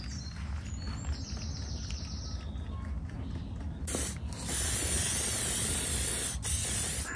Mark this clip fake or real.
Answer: real